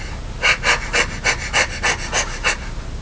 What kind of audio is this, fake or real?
real